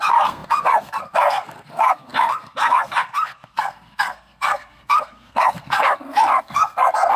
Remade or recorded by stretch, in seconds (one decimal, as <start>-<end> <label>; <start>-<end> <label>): 0.0-7.2 remade